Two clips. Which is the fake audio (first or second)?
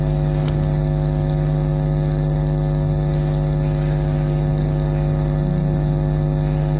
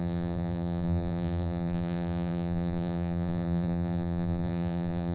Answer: second